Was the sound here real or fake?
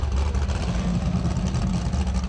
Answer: real